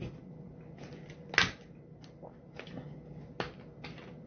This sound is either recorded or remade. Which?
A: recorded